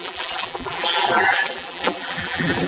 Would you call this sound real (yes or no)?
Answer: no